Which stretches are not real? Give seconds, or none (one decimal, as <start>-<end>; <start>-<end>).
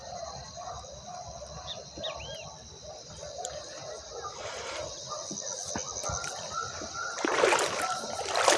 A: none